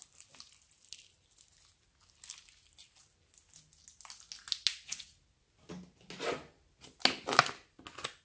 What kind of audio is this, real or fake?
real